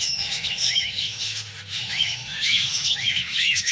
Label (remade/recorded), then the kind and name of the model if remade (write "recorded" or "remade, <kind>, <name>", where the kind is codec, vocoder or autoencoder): remade, autoencoder, DAC-VAE